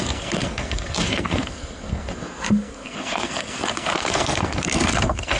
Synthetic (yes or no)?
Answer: yes